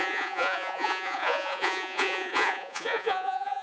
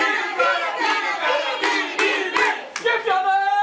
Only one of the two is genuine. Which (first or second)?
second